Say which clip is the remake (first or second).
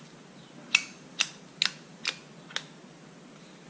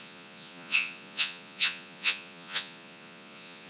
second